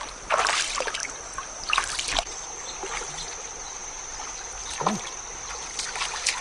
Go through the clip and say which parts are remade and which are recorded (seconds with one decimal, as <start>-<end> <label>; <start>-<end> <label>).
0.0-6.4 recorded